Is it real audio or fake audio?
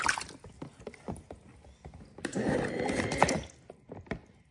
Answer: real